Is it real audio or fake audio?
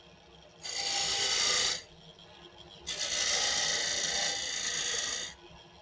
real